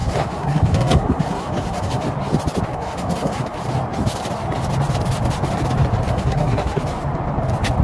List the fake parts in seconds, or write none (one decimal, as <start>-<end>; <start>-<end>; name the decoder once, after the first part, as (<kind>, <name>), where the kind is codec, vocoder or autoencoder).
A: 0.0-2.0 (codec, SNAC); 2.7-3.6; 6.1-6.8